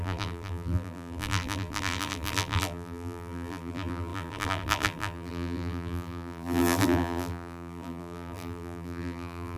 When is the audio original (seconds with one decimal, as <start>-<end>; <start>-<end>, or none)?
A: none